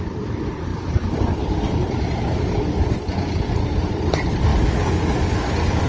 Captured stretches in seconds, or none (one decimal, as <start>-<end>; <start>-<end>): 0.0-5.9